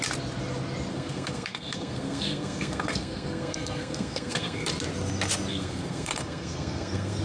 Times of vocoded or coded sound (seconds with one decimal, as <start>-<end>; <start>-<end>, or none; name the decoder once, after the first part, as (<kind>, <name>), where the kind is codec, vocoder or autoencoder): 0.9-4.7 (codec, SNAC); 5.5-7.2